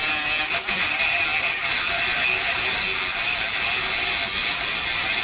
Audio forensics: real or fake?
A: real